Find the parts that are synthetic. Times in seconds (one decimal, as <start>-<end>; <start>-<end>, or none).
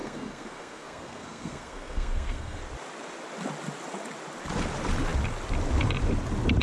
0.0-2.6